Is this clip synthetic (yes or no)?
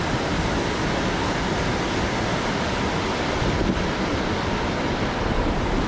no